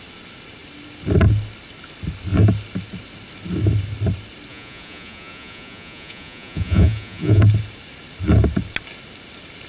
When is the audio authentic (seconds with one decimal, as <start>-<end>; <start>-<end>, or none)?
0.0-4.5; 7.4-9.7